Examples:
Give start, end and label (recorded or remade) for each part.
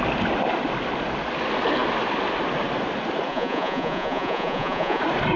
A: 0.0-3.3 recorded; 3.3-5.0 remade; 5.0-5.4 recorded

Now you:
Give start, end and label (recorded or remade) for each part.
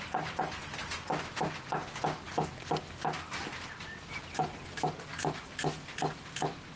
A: 0.0-6.8 recorded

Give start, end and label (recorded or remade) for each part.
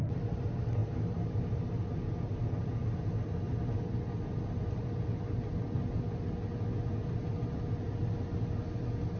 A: 0.0-9.2 recorded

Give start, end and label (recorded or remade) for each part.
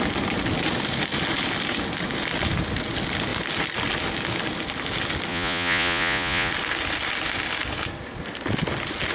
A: 0.0-5.3 recorded; 5.3-6.5 remade; 6.5-9.1 recorded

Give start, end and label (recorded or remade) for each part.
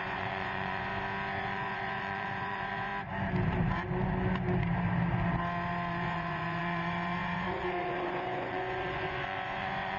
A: 0.0-0.9 remade; 0.9-1.4 recorded; 1.4-2.9 remade; 2.9-6.0 recorded; 6.0-10.0 remade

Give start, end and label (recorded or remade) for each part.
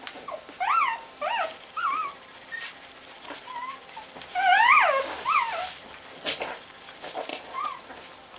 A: 0.0-7.3 recorded; 7.3-7.8 remade; 7.8-8.4 recorded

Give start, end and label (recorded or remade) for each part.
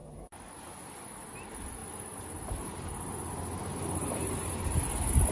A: 0.0-5.3 recorded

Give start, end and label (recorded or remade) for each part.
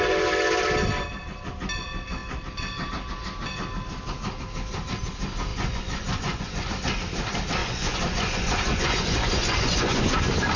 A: 0.0-5.5 recorded; 5.5-6.7 remade; 6.7-7.6 recorded; 7.6-10.2 remade; 10.2-10.6 recorded